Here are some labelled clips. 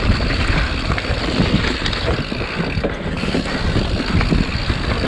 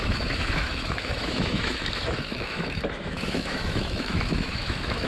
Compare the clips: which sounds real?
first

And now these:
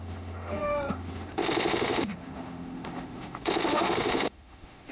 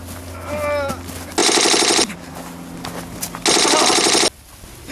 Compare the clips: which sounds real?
second